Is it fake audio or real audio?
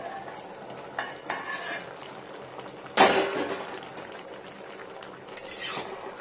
real